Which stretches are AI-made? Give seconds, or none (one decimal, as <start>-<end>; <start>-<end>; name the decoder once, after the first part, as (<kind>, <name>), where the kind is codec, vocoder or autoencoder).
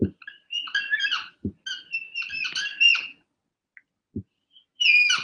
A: none